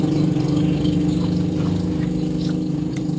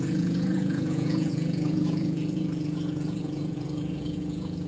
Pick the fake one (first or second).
second